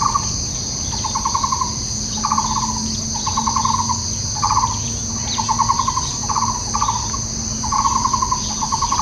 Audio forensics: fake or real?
real